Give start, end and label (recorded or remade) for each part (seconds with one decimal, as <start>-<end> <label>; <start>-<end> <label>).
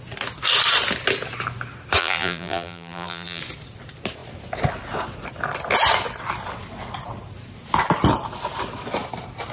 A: 0.0-2.0 recorded; 2.0-3.4 remade; 3.4-9.5 recorded